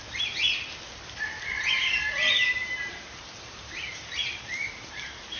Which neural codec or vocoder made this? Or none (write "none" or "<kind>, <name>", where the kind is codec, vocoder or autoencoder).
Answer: vocoder, BigVGAN v2